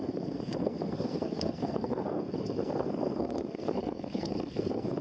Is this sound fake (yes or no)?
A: yes